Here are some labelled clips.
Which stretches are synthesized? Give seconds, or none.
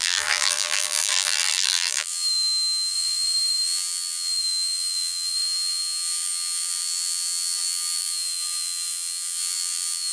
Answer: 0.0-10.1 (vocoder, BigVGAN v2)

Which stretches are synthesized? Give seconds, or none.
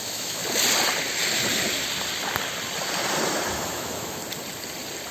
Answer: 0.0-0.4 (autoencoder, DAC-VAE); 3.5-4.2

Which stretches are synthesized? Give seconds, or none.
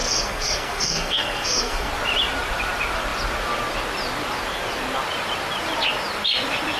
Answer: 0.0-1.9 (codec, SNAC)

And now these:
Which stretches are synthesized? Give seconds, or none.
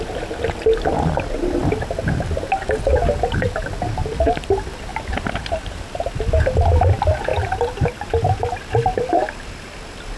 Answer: 4.9-6.0 (vocoder, BigVGAN v2); 7.3-8.4